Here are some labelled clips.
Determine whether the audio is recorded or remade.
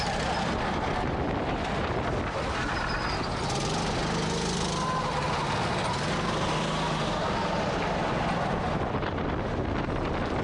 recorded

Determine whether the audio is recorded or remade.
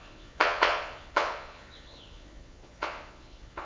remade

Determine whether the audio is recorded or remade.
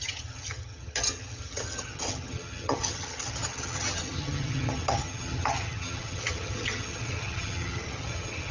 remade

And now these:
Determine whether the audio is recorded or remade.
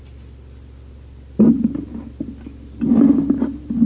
recorded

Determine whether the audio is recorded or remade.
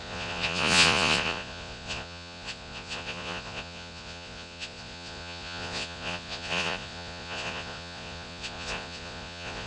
remade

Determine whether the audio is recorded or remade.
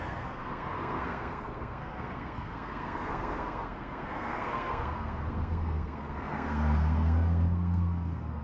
remade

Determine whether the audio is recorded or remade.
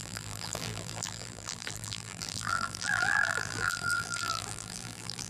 remade